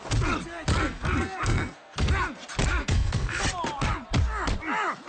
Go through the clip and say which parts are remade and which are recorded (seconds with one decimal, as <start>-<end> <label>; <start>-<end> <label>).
0.0-0.8 recorded; 0.8-2.1 remade; 2.1-2.8 recorded; 2.8-3.4 remade; 3.4-5.1 recorded